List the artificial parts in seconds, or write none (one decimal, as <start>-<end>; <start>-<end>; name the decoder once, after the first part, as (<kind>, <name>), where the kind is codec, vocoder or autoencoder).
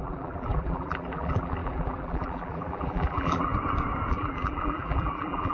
0.0-3.5 (vocoder, BigVGAN v2); 4.1-5.5